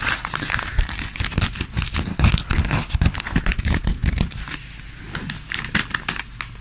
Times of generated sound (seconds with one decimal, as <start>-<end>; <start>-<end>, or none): 2.1-3.4